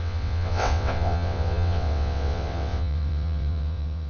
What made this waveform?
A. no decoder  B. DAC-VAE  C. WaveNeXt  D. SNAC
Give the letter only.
C